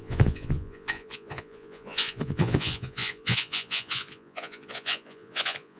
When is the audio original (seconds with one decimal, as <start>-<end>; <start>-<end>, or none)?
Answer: none